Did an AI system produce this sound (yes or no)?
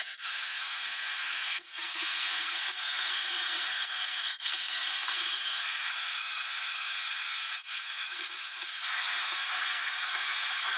yes